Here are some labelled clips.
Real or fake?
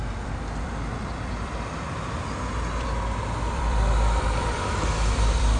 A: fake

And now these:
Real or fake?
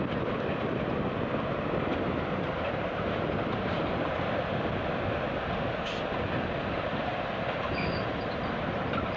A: real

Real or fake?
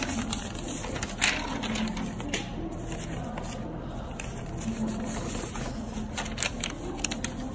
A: real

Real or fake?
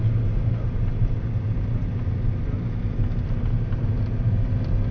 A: real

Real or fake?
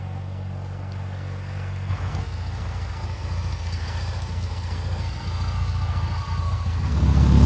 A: fake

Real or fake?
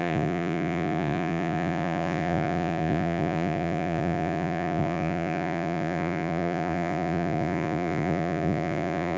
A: fake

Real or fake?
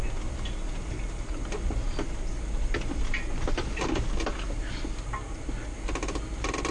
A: real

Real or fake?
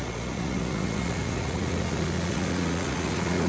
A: fake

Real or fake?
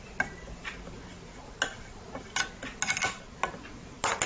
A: real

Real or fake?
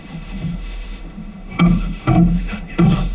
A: fake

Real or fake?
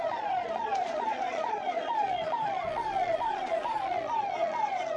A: fake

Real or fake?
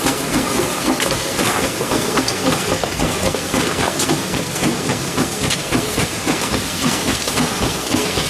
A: fake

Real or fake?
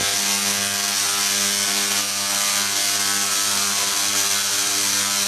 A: real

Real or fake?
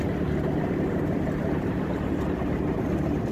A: real